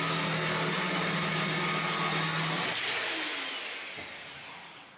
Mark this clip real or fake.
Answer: real